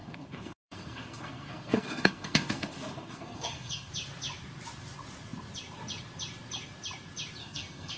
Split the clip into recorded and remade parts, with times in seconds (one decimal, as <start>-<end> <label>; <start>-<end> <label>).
0.0-3.9 remade; 3.9-7.4 recorded; 7.4-8.0 remade